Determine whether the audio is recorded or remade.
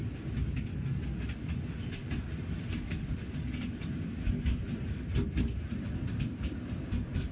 recorded